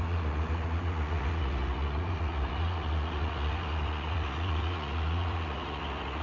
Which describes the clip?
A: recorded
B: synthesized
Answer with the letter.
B